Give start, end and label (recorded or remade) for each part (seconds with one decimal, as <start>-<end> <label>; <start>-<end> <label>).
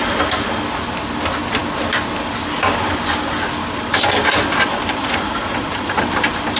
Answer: 0.0-5.0 recorded; 5.0-6.0 remade; 6.0-6.6 recorded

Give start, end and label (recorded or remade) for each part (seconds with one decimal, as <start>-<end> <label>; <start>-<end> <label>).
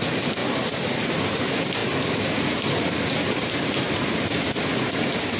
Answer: 0.0-5.4 recorded